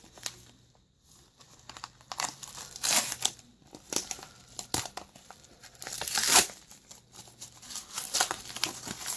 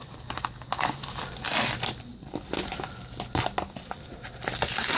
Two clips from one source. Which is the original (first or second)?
second